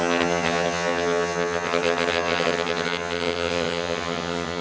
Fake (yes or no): yes